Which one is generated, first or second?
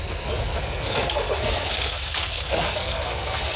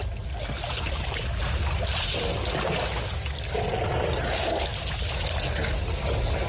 first